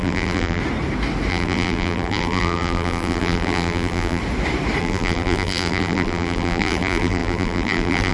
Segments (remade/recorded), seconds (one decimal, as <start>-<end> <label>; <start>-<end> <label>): 0.0-0.6 remade; 0.6-1.3 recorded; 1.3-4.2 remade; 4.2-4.8 recorded; 4.8-8.1 remade